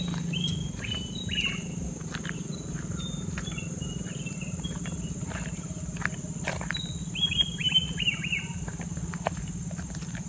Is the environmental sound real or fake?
real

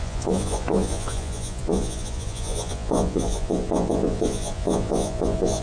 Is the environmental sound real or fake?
fake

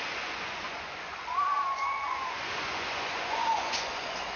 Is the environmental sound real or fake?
fake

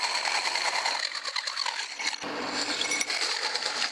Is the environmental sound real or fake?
real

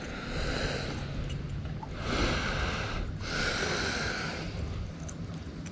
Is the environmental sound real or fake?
real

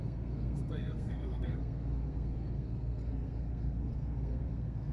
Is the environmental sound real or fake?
fake